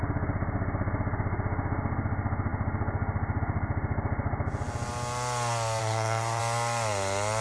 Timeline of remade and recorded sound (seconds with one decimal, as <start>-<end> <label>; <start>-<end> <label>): 0.0-5.8 recorded; 5.8-6.4 remade; 6.4-7.4 recorded